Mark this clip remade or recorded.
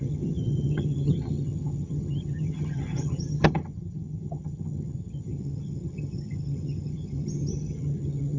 remade